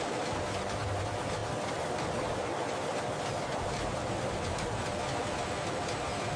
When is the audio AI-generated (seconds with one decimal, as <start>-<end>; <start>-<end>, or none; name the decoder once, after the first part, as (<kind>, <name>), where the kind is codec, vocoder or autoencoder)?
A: none